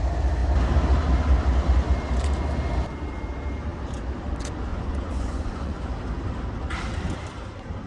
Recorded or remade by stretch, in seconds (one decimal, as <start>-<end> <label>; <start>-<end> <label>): 0.0-4.7 recorded; 4.7-5.9 remade; 5.9-7.9 recorded